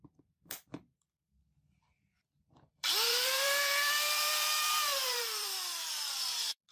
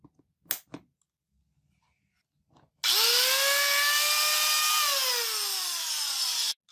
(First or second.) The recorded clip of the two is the second